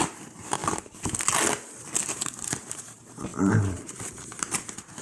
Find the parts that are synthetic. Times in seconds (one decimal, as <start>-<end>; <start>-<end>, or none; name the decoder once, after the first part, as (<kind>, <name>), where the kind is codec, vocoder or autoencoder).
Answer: 0.0-0.6 (vocoder, BigVGAN v2); 2.1-5.0

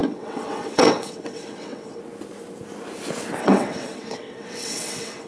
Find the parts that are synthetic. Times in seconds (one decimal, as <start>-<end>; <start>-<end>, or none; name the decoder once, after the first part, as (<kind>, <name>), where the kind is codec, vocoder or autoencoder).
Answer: 0.0-2.0 (vocoder, WaveNeXt); 3.4-5.3

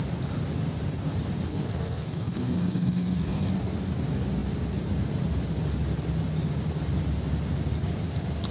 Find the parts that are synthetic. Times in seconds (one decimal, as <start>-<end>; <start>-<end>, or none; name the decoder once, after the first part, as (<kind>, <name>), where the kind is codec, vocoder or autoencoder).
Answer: 1.5-3.5 (codec, SNAC)